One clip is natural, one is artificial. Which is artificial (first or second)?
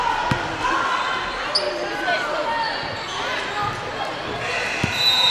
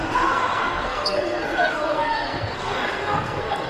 second